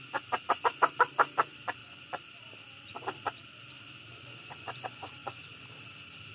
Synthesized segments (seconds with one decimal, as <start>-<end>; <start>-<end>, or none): 1.8-2.3; 4.1-5.5